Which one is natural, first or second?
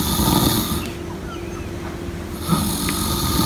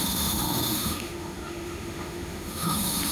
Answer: first